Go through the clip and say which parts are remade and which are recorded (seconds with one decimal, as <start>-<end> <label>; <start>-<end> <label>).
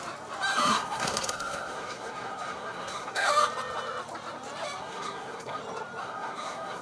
0.0-0.7 recorded; 0.7-3.3 remade; 3.3-4.8 recorded; 4.8-5.6 remade; 5.6-6.0 recorded; 6.0-6.8 remade